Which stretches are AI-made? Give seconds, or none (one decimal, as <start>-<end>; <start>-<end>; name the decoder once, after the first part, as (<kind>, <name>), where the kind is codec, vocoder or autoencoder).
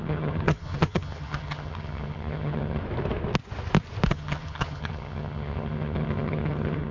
0.0-2.8 (vocoder, HiFi-GAN); 4.1-6.9